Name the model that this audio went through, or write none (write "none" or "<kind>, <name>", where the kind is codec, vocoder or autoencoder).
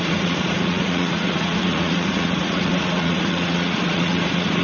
vocoder, Vocos